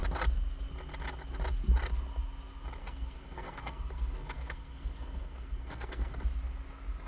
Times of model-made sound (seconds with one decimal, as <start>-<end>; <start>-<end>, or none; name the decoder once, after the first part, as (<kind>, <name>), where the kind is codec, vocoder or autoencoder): 2.8-6.2 (codec, SNAC)